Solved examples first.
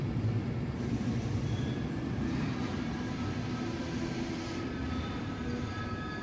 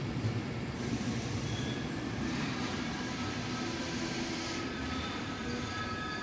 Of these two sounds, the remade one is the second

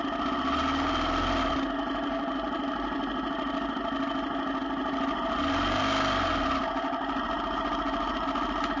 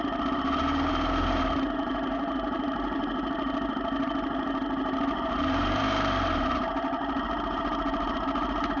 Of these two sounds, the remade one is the second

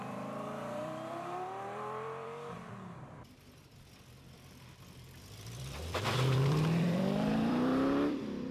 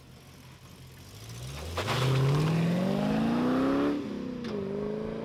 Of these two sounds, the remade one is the first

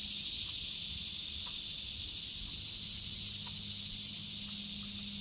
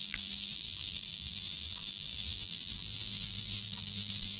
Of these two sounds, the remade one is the second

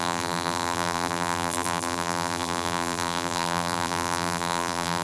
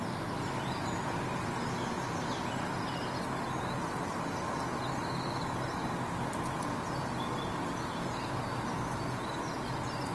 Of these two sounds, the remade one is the first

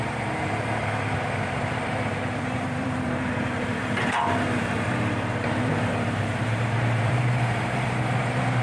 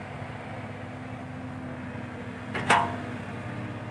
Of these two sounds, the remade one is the first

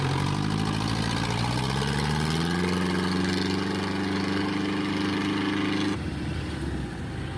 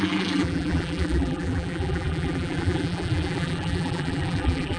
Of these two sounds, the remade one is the second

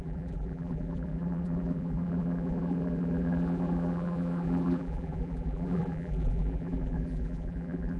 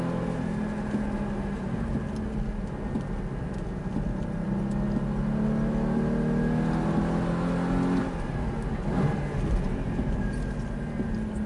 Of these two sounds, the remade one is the first